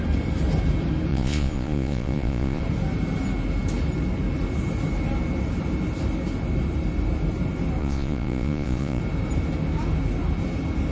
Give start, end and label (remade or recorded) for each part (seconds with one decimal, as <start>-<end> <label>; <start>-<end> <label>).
0.0-1.1 recorded; 1.1-2.6 remade; 2.6-7.8 recorded; 7.8-9.0 remade; 9.0-10.9 recorded